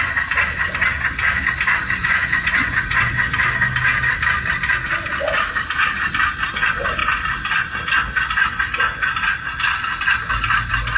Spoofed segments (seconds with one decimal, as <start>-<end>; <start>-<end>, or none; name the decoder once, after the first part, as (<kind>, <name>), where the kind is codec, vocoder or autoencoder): 2.0-3.1 (vocoder, Vocos)

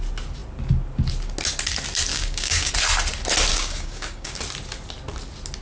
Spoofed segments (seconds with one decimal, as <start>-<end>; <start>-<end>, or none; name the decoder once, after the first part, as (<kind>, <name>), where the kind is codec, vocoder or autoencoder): 2.1-2.7 (codec, DAC); 3.5-4.4

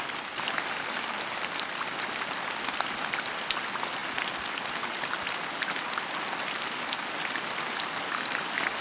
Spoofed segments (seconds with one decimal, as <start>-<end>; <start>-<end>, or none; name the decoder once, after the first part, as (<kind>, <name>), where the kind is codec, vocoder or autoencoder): none

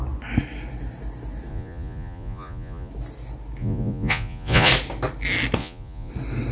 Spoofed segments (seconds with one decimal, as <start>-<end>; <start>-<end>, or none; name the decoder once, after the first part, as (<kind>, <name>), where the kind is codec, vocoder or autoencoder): 1.5-2.9 (vocoder, Vocos); 3.6-4.7; 5.6-6.1